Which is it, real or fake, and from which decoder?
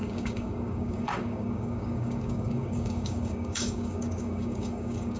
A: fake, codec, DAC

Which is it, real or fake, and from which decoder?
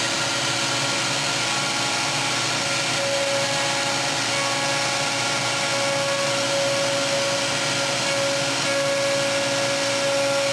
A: real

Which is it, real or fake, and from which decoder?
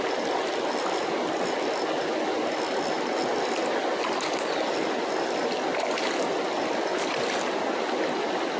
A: real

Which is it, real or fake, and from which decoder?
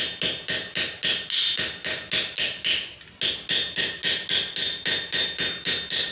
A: real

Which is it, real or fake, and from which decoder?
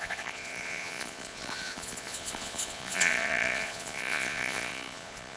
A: fake, vocoder, Vocos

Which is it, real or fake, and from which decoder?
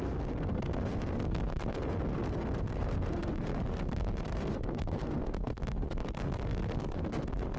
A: fake, codec, SNAC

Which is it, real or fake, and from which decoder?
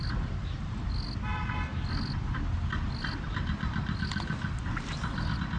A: real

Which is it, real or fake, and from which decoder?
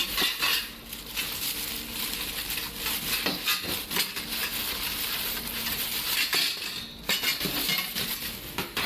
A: real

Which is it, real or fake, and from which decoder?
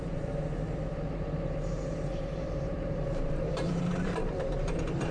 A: fake, vocoder, BigVGAN v2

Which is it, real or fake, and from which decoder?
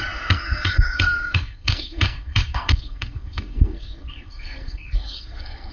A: fake, codec, SNAC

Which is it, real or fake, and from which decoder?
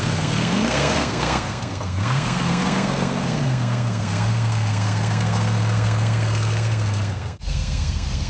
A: fake, codec, SNAC